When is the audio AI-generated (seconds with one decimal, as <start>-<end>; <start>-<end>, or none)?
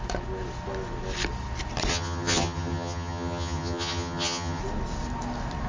1.9-4.6